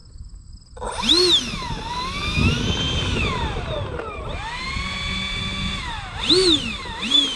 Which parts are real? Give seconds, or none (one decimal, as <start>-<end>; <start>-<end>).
0.0-7.4